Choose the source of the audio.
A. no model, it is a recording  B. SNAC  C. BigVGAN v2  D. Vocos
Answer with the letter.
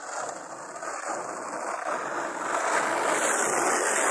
A